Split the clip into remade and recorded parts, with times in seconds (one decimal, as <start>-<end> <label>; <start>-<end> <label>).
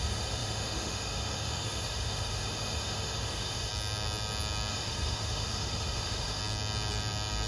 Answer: 0.0-3.7 remade; 3.7-4.7 recorded; 4.7-6.4 remade; 6.4-7.5 recorded